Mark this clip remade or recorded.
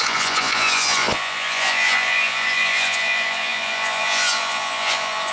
remade